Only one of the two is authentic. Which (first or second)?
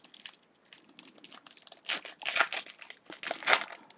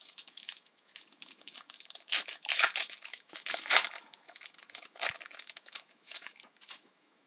first